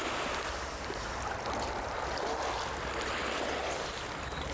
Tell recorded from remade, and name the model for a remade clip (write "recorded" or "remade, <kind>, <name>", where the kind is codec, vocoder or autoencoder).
recorded